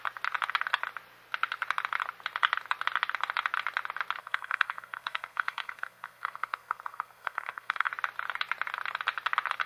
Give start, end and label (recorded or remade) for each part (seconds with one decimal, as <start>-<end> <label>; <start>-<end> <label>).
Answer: 0.0-4.2 recorded; 4.2-7.9 remade; 7.9-9.7 recorded